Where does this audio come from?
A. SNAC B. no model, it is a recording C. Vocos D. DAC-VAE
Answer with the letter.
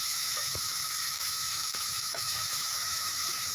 D